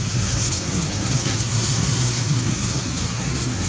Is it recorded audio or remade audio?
remade